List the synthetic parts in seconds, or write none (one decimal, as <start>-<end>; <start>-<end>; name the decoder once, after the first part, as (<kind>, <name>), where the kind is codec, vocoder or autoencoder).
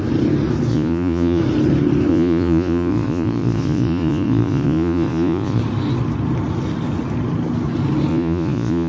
0.7-1.4 (vocoder, Vocos); 2.1-5.6; 8.1-8.9